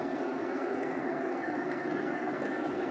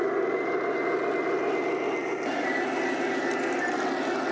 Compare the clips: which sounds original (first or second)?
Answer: second